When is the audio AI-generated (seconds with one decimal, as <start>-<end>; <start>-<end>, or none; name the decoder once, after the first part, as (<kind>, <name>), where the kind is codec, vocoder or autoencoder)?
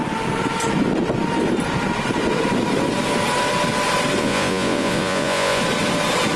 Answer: 4.2-5.6 (vocoder, Vocos)